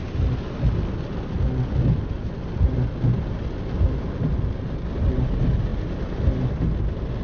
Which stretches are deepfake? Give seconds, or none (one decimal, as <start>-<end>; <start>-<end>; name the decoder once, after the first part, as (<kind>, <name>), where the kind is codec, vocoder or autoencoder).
none